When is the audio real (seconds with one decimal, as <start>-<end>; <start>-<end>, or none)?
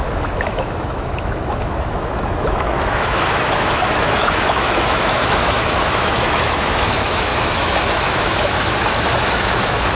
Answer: none